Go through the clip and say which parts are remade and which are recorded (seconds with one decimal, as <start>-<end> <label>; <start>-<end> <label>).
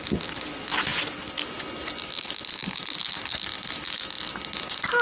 0.0-5.0 recorded